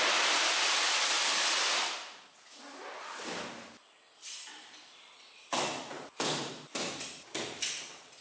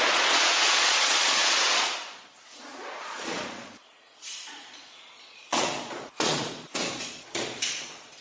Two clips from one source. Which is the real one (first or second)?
first